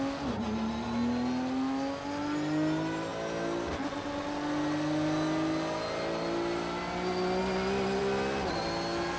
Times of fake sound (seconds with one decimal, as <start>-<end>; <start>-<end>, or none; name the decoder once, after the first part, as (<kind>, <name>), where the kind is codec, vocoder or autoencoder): none